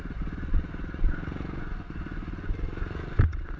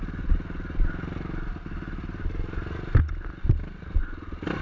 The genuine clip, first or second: second